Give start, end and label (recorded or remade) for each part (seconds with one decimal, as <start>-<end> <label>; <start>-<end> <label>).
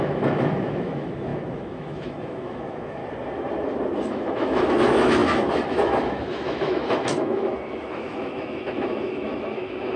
0.0-3.0 remade; 3.0-4.0 recorded; 4.0-10.0 remade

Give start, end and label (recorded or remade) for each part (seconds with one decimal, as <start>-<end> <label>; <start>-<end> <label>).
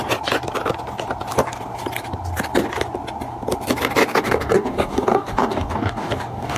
0.0-4.0 recorded; 4.0-6.6 remade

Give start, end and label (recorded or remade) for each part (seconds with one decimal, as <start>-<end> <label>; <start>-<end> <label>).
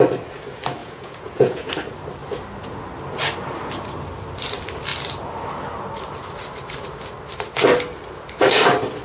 0.0-0.8 recorded; 0.8-1.7 remade; 1.7-9.0 recorded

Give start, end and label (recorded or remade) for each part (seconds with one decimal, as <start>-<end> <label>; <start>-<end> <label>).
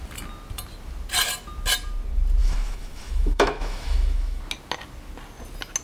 0.0-2.4 recorded; 2.4-4.4 remade; 4.4-5.8 recorded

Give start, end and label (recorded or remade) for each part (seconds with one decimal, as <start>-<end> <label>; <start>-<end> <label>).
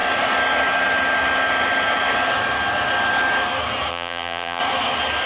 0.0-3.9 recorded; 3.9-4.6 remade; 4.6-5.3 recorded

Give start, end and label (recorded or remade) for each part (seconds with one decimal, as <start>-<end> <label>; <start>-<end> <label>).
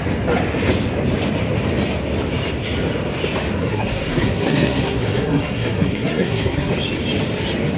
0.0-3.6 recorded; 3.6-6.7 remade; 6.7-7.8 recorded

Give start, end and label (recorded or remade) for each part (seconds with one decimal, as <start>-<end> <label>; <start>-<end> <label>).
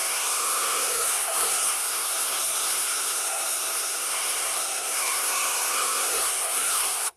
0.0-7.2 remade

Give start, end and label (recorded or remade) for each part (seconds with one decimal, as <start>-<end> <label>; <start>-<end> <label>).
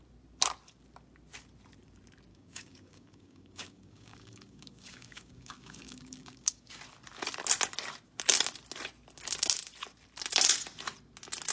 0.0-2.3 recorded; 2.3-6.8 remade; 6.8-11.5 recorded